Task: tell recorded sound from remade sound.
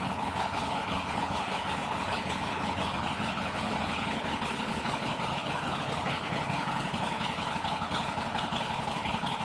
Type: remade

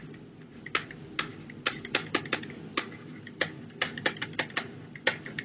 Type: recorded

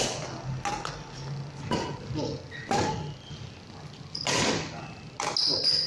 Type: recorded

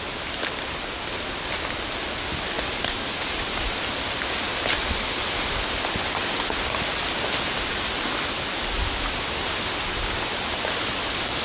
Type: recorded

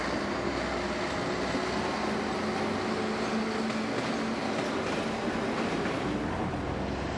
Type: recorded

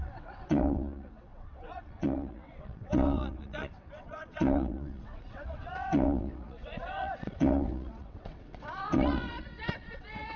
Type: remade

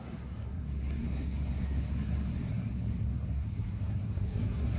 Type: remade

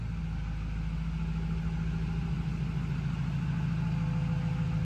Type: recorded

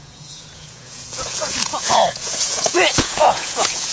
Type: remade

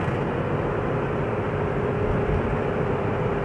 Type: recorded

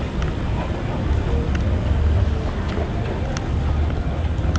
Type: recorded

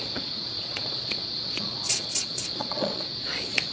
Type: remade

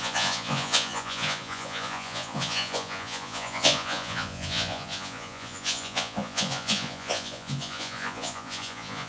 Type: remade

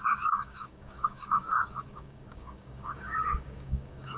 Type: remade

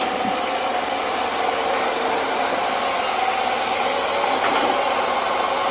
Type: recorded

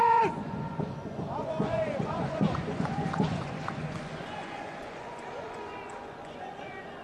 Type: remade